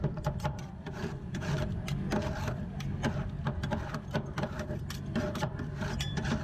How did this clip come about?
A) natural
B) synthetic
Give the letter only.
B